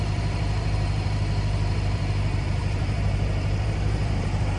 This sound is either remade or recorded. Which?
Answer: remade